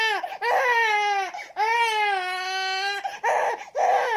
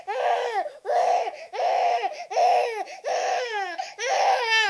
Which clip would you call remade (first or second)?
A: second